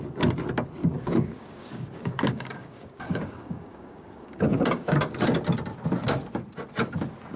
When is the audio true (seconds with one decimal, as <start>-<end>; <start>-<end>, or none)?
0.0-0.8; 5.1-7.4